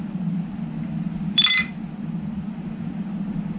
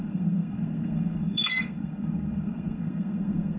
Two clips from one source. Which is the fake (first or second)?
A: second